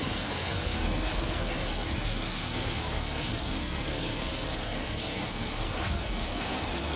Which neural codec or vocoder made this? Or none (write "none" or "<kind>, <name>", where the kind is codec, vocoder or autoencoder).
codec, SNAC